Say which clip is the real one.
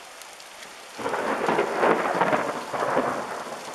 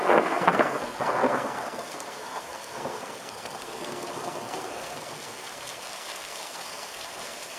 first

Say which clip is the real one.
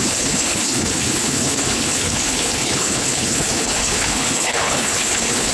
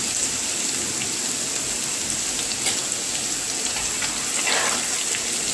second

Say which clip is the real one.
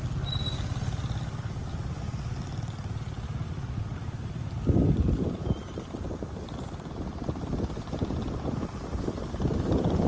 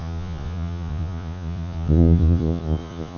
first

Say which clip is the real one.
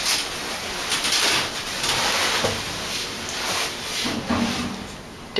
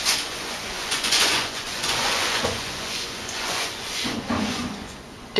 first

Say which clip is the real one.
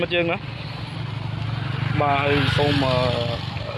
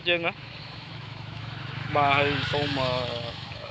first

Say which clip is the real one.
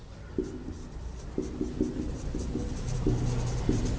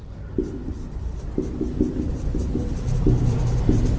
first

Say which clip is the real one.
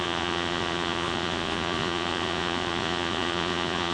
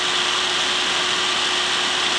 second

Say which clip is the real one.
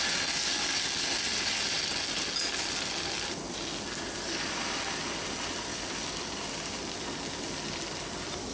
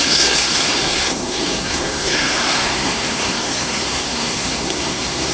first